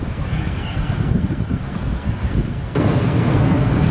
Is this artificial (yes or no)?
yes